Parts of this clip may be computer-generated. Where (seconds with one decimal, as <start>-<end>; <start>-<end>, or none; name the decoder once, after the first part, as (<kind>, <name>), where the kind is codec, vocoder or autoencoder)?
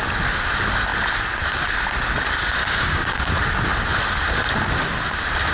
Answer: 2.6-3.3 (codec, DAC)